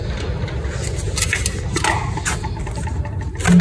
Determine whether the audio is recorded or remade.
recorded